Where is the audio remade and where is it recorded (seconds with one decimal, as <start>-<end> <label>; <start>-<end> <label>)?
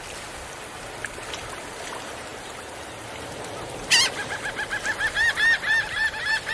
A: 0.0-6.5 recorded